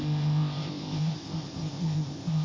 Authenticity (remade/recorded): remade